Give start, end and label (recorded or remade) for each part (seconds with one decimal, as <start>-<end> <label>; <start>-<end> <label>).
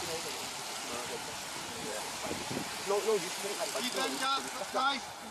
0.0-1.8 recorded; 1.8-5.3 remade